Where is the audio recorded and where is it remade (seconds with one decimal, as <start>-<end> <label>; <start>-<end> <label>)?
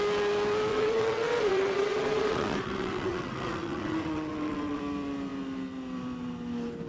0.0-0.7 recorded; 0.7-4.8 remade; 4.8-6.9 recorded